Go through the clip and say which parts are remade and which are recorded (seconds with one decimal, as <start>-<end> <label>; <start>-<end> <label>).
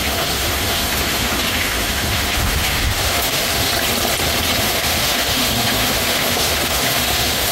0.0-3.7 remade; 3.7-4.6 recorded; 4.6-7.5 remade